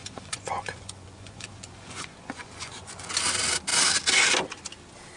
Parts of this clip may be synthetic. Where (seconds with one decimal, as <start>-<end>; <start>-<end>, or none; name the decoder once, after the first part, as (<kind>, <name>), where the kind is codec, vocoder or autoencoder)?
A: 0.0-3.1 (vocoder, Vocos)